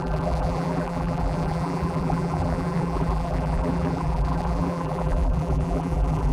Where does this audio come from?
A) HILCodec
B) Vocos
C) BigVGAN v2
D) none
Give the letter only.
C